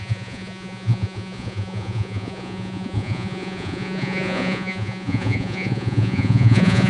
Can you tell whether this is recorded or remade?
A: remade